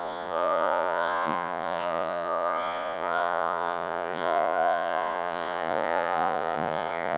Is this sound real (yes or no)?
no